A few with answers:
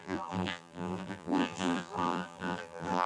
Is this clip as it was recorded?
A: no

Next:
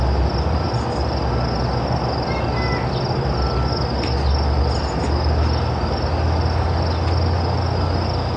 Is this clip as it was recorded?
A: yes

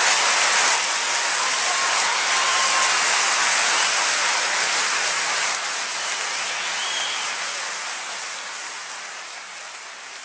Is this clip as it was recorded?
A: yes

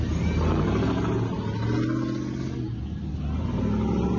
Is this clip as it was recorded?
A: yes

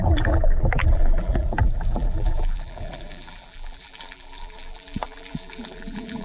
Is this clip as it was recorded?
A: no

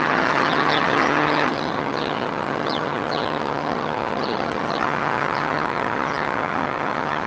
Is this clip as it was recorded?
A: no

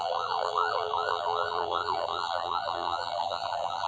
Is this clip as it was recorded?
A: no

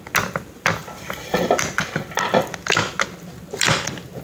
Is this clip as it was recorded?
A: yes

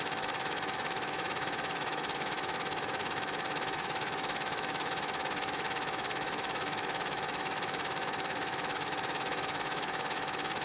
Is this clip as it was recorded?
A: no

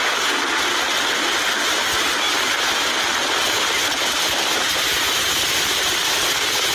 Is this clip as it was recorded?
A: yes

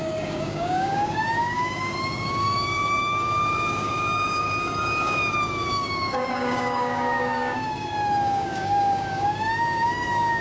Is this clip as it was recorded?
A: no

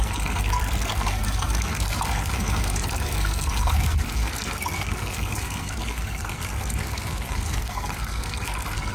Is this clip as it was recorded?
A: no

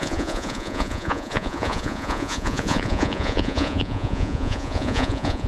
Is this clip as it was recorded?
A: no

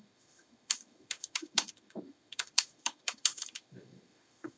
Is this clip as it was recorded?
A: no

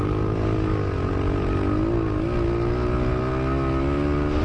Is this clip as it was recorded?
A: yes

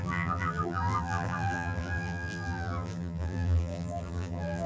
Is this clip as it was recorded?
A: no